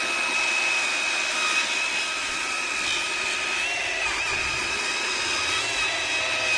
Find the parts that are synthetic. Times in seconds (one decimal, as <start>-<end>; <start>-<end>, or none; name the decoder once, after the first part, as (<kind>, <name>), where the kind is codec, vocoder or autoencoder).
2.2-2.7 (vocoder, Vocos); 4.3-4.9